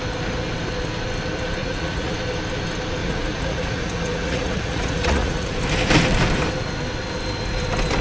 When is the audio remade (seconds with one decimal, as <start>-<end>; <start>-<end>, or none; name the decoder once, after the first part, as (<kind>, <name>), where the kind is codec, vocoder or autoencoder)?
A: 1.6-2.1 (vocoder, Vocos); 3.0-5.5